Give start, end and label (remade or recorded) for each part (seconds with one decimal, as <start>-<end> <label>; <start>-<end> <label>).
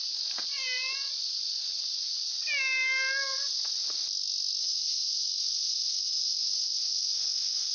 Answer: 0.0-4.6 recorded; 4.6-7.7 remade